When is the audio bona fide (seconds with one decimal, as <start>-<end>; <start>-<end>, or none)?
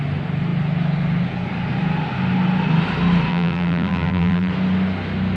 0.0-3.3; 4.5-5.4